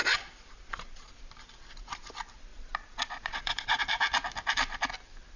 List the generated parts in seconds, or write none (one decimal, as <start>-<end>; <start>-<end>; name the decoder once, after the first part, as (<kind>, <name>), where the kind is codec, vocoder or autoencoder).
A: 0.0-1.1 (vocoder, Vocos); 2.5-3.8